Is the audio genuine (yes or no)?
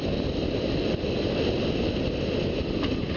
yes